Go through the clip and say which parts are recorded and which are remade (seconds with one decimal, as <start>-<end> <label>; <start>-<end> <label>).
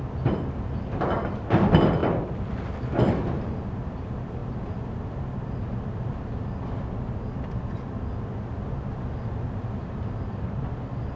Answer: 0.0-11.2 recorded